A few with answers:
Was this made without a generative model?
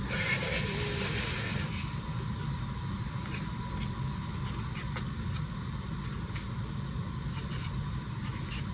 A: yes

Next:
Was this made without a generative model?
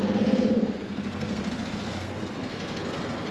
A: no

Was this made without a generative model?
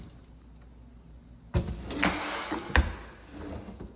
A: yes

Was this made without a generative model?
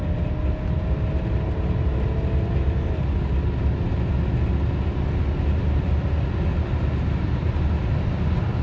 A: yes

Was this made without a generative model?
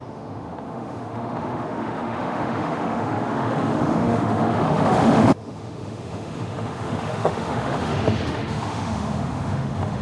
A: no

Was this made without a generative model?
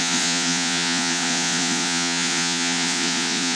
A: no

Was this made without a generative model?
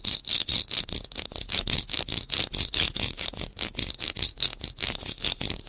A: yes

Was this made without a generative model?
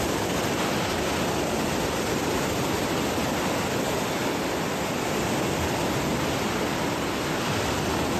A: yes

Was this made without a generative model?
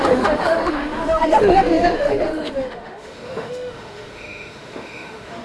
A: no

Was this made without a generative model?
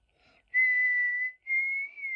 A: yes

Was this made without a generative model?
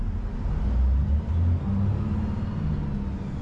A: yes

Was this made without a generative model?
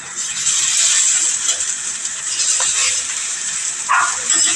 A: no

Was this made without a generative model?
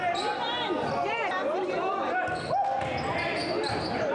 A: yes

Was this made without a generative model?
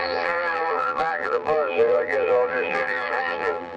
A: no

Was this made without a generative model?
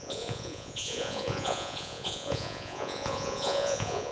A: no